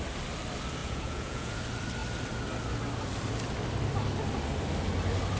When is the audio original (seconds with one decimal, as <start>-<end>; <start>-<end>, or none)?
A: 0.0-0.8; 1.6-5.4